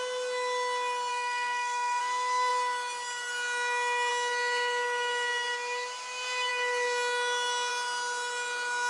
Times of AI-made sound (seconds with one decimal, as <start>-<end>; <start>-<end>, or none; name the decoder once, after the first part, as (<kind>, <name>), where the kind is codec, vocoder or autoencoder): 1.1-2.0 (codec, SNAC)